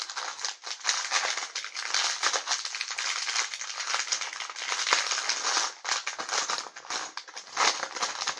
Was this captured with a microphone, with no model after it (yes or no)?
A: yes